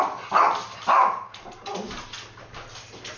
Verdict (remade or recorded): recorded